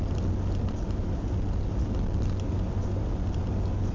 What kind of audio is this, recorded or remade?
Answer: recorded